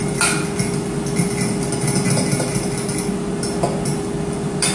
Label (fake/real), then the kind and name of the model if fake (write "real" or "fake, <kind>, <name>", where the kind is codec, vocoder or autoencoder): real